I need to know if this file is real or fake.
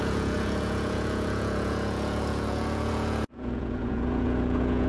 fake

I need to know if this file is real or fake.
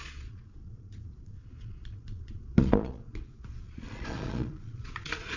fake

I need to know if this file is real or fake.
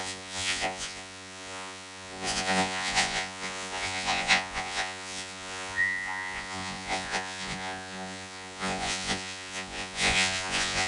fake